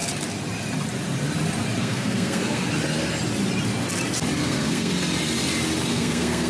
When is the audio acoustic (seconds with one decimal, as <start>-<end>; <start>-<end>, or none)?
0.0-1.8; 2.7-4.4; 4.9-5.9